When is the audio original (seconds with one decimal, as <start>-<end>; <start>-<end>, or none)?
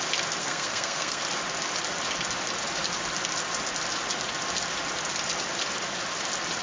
0.0-0.4; 1.2-6.6